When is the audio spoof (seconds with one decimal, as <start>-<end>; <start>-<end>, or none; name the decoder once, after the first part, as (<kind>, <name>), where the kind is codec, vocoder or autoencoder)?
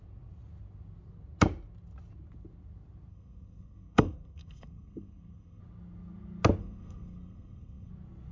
3.1-5.6 (codec, SNAC); 6.6-7.9